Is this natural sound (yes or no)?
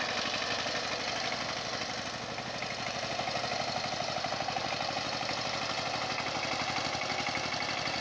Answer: yes